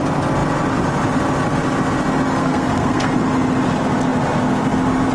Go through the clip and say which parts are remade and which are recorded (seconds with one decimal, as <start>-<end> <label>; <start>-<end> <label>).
0.0-2.4 recorded; 2.4-3.1 remade; 3.1-5.1 recorded